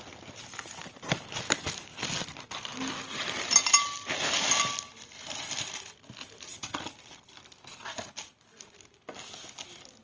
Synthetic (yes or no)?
no